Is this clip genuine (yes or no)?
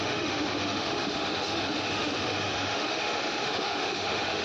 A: no